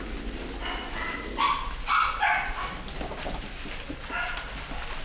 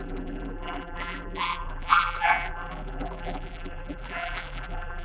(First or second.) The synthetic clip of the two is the second